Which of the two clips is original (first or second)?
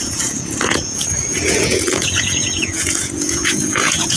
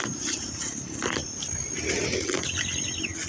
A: second